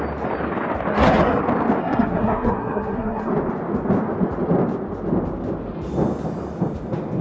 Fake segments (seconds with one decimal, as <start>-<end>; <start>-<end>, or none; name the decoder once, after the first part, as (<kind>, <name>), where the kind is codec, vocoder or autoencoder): 0.9-1.4 (codec, SNAC); 1.8-3.3